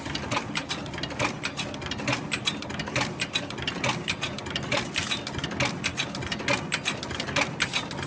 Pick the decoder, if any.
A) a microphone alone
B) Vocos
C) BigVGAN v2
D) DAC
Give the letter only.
A